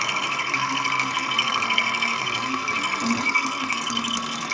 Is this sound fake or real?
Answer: fake